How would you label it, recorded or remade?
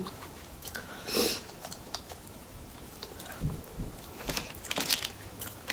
remade